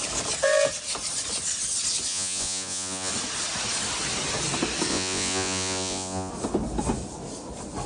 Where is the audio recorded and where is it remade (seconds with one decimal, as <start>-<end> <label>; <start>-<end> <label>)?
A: 0.0-2.1 recorded; 2.1-3.1 remade; 3.1-4.9 recorded; 4.9-6.3 remade; 6.3-7.9 recorded